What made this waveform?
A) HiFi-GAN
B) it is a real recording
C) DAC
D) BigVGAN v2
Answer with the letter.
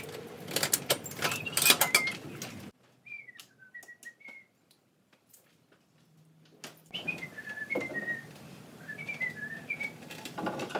B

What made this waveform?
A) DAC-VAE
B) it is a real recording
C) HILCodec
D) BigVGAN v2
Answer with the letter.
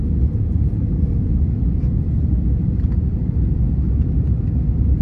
D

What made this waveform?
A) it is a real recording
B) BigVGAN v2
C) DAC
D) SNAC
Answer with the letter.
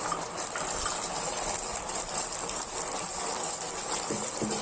A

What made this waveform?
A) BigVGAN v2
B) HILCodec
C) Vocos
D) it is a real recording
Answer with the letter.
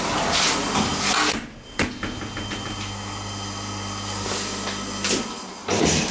D